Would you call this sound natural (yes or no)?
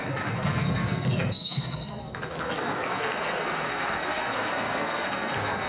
no